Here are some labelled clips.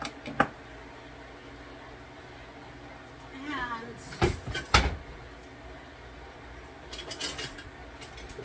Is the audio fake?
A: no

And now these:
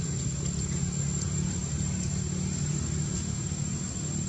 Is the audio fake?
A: no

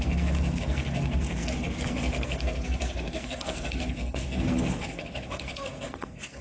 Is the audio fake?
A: yes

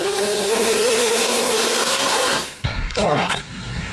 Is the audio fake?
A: yes